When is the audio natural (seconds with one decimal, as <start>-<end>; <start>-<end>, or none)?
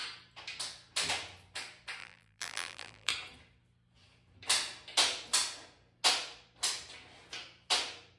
0.0-2.0; 3.1-8.2